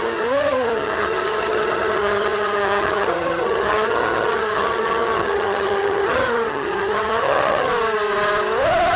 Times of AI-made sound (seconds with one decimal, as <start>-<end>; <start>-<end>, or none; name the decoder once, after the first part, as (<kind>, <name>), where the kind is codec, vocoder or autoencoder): 0.0-7.7 (vocoder, HiFi-GAN)